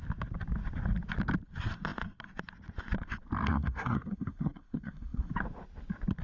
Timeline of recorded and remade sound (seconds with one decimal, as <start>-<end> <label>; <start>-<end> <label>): 0.0-3.5 recorded; 3.5-5.3 remade; 5.3-6.2 recorded